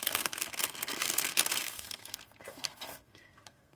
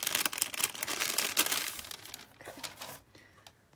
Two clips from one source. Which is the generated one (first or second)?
first